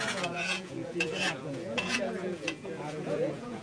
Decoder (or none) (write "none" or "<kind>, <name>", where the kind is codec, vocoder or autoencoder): vocoder, Vocos